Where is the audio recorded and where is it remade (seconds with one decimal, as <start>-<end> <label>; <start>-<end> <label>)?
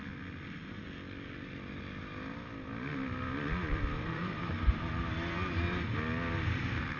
0.0-4.0 recorded; 4.0-4.7 remade; 4.7-7.0 recorded